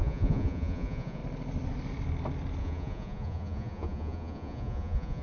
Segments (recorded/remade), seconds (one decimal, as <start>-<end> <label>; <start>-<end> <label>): 0.0-1.2 remade; 1.2-2.6 recorded; 2.6-5.2 remade